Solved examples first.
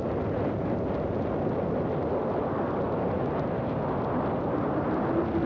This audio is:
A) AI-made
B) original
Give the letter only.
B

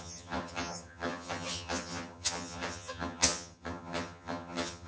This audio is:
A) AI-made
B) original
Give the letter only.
A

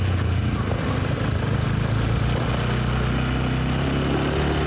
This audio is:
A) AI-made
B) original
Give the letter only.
B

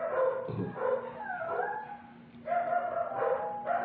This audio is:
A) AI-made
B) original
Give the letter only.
B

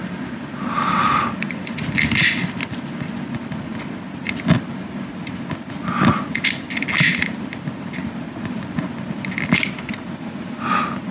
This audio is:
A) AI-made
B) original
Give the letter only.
B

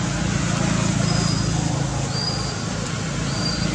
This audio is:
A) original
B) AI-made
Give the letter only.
A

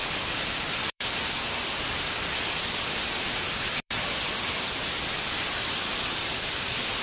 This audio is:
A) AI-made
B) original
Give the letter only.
A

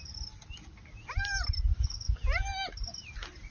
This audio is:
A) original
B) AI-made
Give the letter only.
A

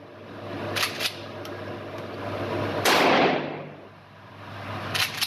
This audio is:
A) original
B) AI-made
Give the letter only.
A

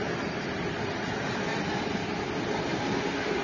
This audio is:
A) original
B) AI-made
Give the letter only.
A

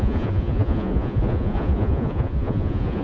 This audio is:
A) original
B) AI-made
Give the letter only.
B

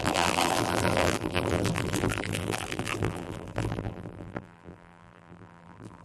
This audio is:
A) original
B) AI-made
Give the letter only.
B